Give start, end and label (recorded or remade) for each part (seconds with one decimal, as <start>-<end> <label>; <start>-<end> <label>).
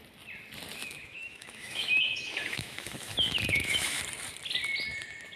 0.0-0.8 recorded; 0.8-4.0 remade; 4.0-5.4 recorded